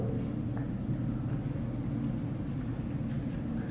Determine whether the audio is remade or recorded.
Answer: recorded